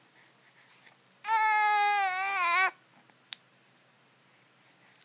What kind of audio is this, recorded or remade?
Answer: recorded